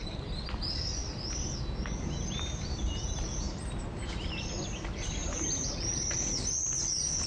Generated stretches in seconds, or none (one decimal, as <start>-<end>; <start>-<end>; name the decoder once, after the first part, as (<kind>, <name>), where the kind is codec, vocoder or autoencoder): 5.2-5.9 (vocoder, BigVGAN v2)